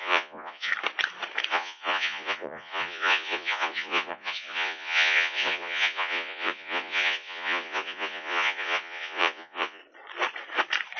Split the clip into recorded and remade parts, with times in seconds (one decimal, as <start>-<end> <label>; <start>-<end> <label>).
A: 0.0-0.7 remade; 0.7-1.5 recorded; 1.5-9.8 remade; 9.8-11.0 recorded